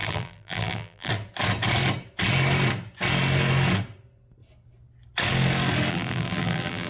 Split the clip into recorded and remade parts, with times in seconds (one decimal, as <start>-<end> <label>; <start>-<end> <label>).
0.0-1.1 remade; 1.1-5.9 recorded; 5.9-6.9 remade

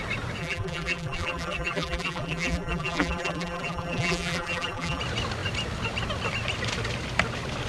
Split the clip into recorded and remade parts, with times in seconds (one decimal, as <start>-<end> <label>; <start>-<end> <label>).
0.0-0.4 recorded; 0.4-5.0 remade; 5.0-7.7 recorded

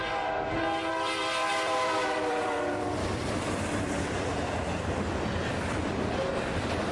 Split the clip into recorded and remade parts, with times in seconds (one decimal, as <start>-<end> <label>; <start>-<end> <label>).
0.0-0.9 recorded; 0.9-4.5 remade; 4.5-6.9 recorded